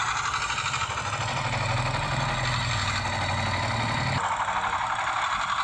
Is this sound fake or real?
real